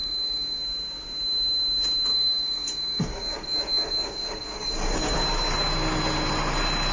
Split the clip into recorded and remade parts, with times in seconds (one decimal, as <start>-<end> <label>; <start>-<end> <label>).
0.0-0.6 remade; 0.6-2.1 recorded; 2.1-5.1 remade; 5.1-6.9 recorded